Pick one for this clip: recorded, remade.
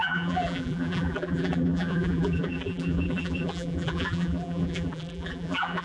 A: remade